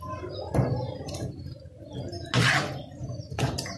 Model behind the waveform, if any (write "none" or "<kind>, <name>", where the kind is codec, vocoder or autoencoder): none